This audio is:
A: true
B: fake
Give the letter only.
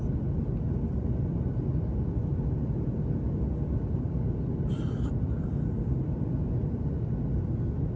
A